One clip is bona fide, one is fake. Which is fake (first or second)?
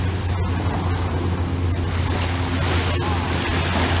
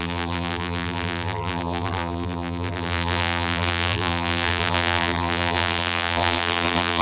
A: second